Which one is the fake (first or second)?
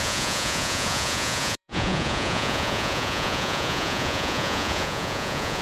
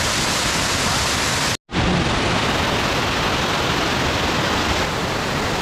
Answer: first